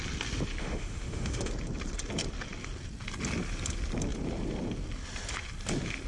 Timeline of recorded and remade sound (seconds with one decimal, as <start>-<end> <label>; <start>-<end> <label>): 0.0-0.6 recorded; 0.6-1.5 remade; 1.5-6.1 recorded